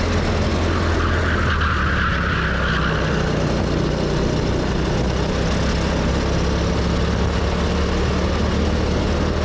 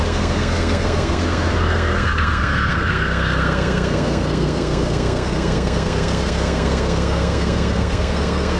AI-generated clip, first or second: second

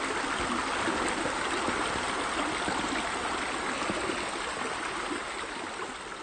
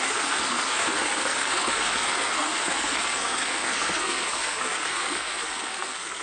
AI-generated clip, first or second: second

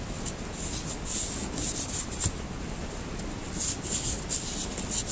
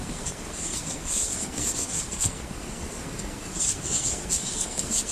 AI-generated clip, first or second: second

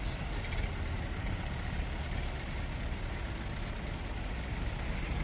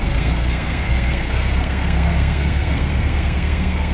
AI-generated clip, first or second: second